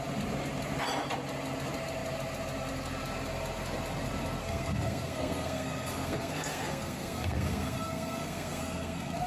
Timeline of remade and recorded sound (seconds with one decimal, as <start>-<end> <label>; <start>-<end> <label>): 0.0-4.4 recorded; 4.4-9.3 remade